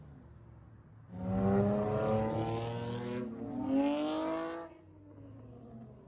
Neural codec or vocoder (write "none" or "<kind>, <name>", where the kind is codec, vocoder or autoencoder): none